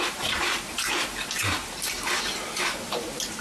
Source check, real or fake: fake